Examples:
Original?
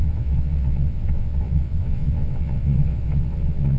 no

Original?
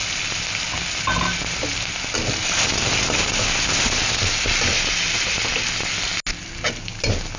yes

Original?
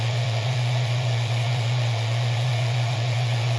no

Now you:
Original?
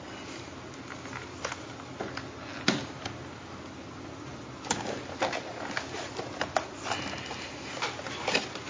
yes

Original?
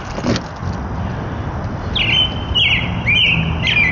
yes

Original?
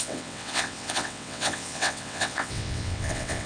no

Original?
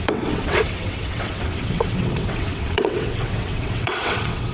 no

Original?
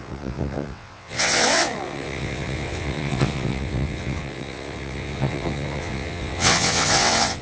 no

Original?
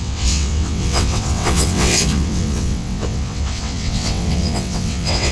no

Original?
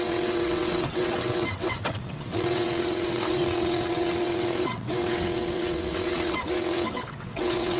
no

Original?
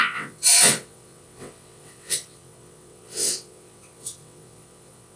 no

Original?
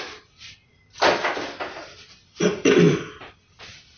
yes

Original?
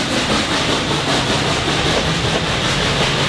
yes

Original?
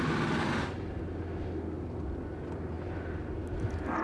yes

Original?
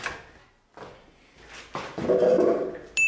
yes